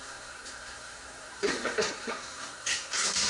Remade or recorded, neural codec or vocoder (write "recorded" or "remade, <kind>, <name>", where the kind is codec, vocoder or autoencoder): remade, codec, SNAC